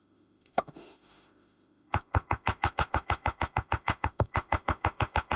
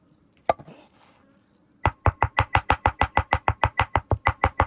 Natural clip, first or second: second